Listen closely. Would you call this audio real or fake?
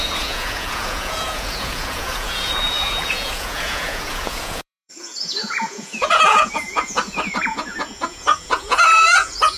fake